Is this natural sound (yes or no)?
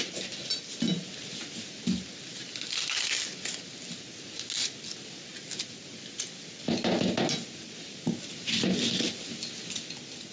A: yes